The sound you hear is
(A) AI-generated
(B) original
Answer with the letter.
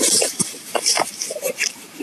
A